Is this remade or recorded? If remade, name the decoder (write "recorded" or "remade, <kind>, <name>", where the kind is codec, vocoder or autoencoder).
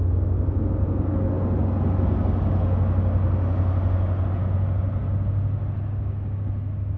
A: recorded